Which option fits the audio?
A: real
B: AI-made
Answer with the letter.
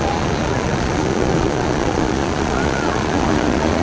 B